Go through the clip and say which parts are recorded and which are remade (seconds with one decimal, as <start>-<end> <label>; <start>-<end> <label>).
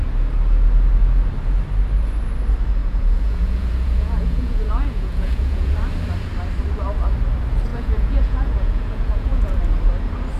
0.0-2.8 recorded; 2.8-5.7 remade; 5.7-7.7 recorded; 7.7-9.6 remade; 9.6-10.4 recorded